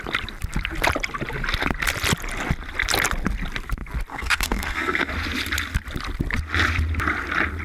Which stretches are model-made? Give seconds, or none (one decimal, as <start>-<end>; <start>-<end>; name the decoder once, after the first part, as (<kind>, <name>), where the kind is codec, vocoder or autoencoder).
4.1-5.1 (codec, SNAC)